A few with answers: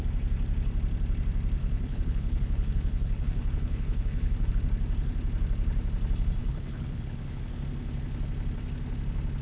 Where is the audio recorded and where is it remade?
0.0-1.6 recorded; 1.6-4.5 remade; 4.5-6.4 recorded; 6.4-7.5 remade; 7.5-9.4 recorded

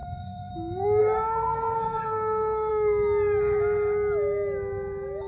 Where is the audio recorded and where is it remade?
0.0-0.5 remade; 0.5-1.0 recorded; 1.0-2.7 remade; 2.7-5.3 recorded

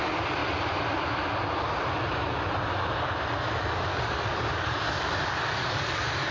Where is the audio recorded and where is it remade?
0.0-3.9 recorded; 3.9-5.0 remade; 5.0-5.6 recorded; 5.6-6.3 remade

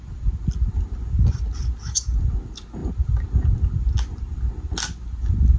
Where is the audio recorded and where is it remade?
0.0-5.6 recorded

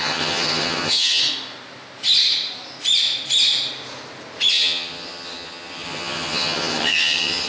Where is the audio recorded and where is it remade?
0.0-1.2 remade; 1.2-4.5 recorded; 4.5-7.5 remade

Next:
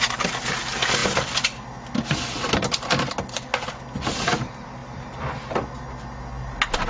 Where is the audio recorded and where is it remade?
0.0-6.9 recorded

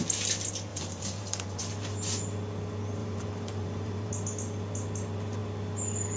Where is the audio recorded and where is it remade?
0.0-0.7 recorded; 0.7-1.6 remade; 1.6-3.0 recorded; 3.0-4.1 remade; 4.1-6.2 recorded

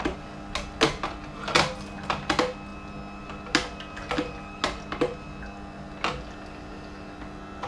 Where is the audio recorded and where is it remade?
0.0-7.7 recorded